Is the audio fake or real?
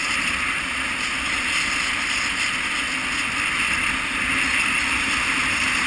real